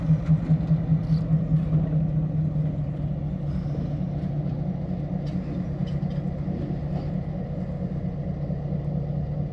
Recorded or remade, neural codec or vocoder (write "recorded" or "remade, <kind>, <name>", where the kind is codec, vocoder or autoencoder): recorded